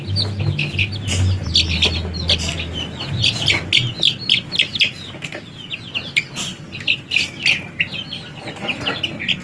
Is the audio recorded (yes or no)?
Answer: yes